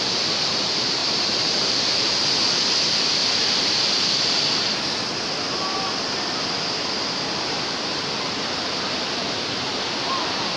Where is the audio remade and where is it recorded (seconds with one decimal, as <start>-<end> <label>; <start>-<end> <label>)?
0.0-1.0 recorded; 1.0-2.4 remade; 2.4-10.6 recorded